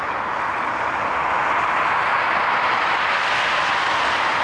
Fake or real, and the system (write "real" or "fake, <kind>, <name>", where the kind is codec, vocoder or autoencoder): real